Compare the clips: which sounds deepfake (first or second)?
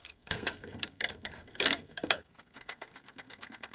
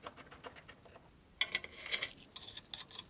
first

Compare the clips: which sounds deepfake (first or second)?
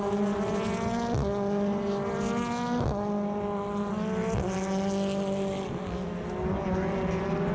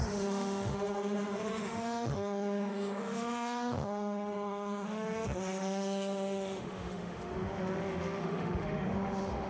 second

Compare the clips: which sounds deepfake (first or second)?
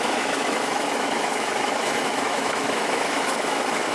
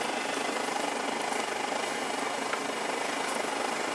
first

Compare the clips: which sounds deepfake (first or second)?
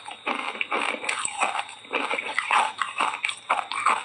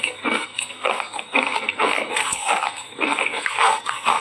second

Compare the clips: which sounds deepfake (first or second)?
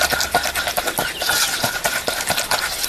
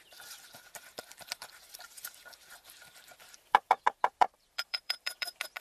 second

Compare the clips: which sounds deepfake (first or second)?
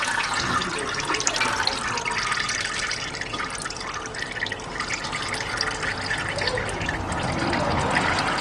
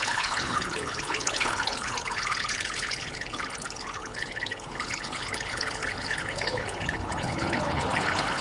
second